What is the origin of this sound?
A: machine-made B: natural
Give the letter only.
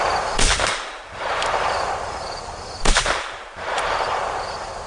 A